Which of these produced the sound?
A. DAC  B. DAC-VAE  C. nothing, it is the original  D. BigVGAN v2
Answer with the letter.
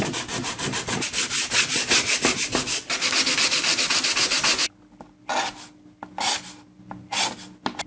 C